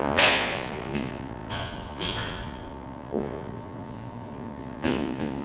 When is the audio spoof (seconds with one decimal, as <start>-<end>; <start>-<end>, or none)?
0.0-5.4